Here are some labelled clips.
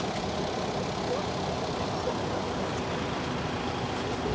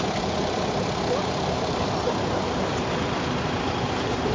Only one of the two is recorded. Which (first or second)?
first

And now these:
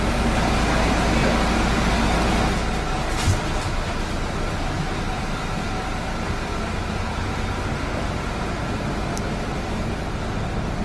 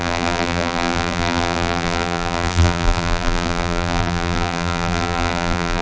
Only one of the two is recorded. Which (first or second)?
first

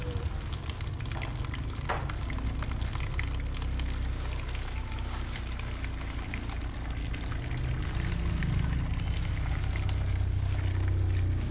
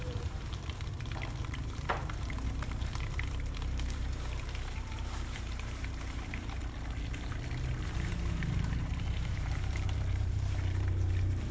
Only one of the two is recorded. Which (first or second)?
first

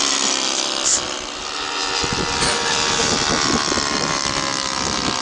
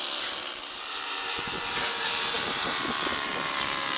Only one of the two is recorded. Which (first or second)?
first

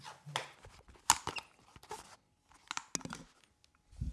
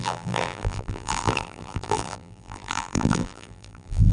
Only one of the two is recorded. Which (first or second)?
first